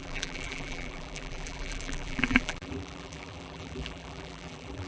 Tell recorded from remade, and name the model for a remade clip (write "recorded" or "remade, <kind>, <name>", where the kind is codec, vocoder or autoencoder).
remade, vocoder, BigVGAN v2